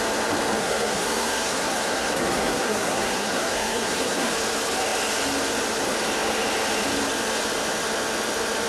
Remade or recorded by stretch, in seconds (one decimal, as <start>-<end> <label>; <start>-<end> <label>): 0.0-0.6 recorded; 0.6-4.3 remade; 4.3-8.7 recorded